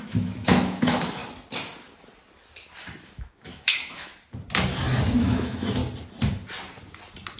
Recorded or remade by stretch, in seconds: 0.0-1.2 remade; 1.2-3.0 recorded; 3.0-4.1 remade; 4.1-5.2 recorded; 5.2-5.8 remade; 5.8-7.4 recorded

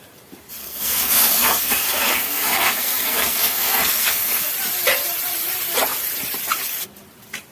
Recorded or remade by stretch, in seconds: 0.0-0.6 recorded; 0.6-4.5 remade; 4.5-7.5 recorded